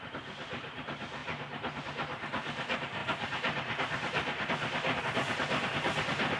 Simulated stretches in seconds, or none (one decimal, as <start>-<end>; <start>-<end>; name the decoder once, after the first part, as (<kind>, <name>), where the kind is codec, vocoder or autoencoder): none